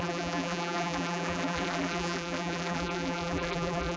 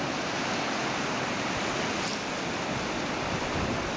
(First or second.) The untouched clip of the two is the second